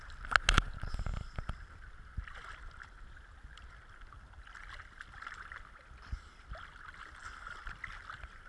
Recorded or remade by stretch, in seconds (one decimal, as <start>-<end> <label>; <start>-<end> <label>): 0.0-8.5 recorded